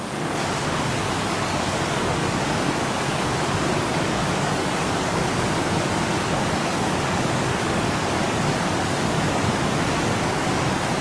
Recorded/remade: remade